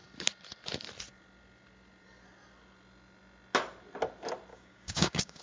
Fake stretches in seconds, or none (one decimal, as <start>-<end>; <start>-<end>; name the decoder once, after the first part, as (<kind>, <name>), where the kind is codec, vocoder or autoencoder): 4.5-5.4 (codec, DAC)